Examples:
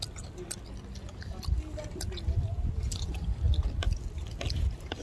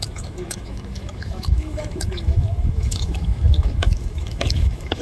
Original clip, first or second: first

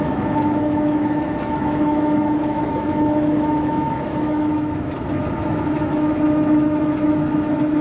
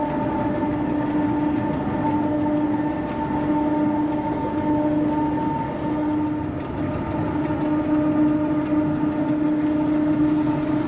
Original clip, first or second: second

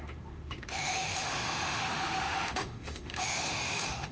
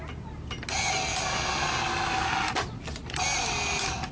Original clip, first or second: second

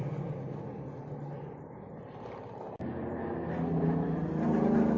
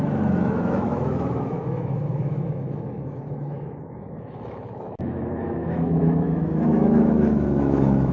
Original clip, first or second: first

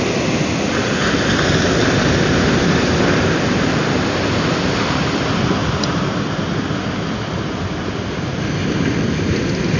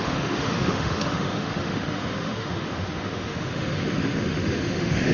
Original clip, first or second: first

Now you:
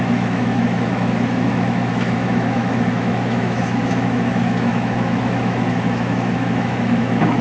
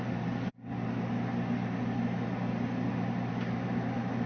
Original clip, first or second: second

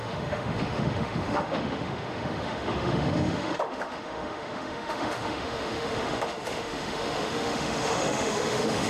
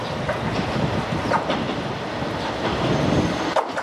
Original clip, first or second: second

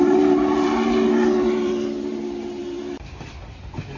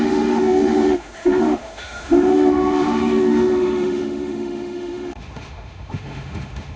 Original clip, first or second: first